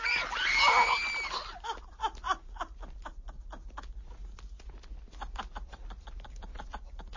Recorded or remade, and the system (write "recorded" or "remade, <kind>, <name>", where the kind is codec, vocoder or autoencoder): recorded